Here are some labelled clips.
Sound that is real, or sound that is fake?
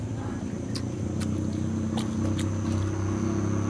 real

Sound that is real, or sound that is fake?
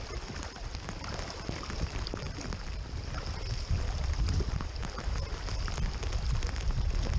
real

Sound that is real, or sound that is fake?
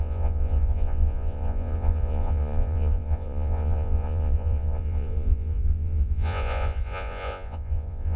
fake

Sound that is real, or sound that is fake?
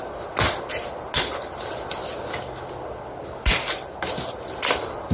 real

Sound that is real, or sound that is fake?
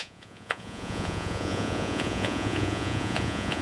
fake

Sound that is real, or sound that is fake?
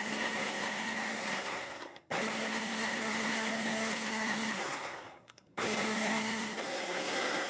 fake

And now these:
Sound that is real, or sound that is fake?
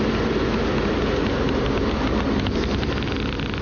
real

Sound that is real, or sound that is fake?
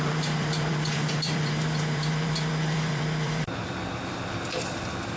fake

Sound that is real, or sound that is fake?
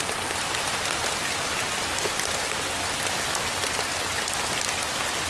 real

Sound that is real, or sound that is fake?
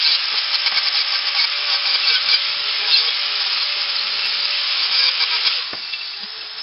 real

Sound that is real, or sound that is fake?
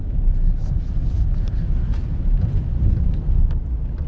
real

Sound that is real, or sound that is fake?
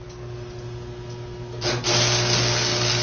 real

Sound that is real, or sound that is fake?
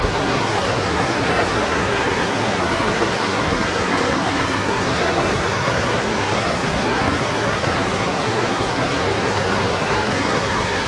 fake